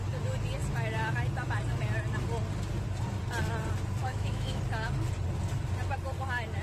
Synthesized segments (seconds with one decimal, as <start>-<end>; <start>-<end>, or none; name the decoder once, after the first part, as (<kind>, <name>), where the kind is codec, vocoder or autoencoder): 4.0-4.6 (autoencoder, DAC-VAE)